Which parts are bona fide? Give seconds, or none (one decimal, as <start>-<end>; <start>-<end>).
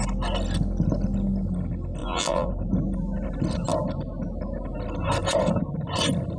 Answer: 0.0-2.0; 2.5-6.4